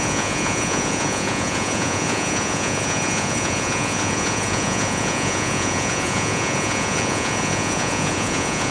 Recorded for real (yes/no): no